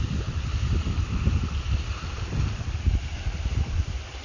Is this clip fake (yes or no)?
no